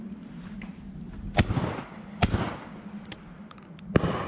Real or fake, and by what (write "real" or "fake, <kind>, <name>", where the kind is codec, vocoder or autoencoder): real